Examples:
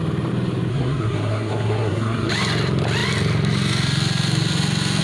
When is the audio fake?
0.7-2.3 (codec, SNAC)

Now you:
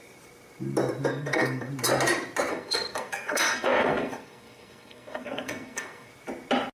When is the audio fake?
1.1-1.7 (codec, SNAC); 2.5-6.1